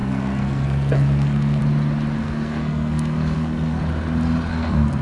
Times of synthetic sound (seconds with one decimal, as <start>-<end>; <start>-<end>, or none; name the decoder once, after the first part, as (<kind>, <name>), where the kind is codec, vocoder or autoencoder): 0.0-1.6 (codec, SNAC); 2.2-3.8; 4.5-5.0